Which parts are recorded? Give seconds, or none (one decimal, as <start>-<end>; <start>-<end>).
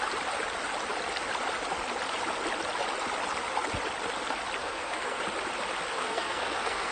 0.0-4.6; 5.2-5.9